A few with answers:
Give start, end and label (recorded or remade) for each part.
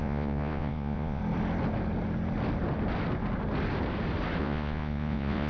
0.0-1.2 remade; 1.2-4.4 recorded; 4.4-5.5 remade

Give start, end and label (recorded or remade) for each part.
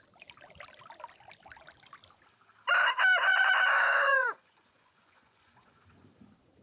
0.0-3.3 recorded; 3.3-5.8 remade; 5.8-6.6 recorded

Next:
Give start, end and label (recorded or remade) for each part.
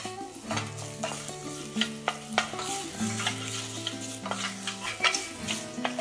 0.0-6.0 recorded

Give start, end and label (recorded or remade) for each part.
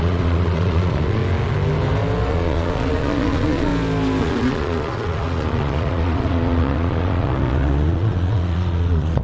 0.0-1.2 remade; 1.2-2.3 recorded; 2.3-3.7 remade; 3.7-4.2 recorded; 4.2-9.2 remade